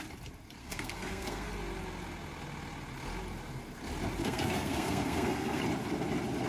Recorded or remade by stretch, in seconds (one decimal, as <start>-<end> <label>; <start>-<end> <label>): 0.0-0.6 recorded; 0.6-1.5 remade; 1.5-4.2 recorded; 4.2-5.6 remade; 5.6-6.5 recorded